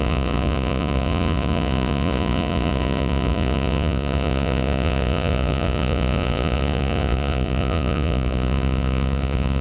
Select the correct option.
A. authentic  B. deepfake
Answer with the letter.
B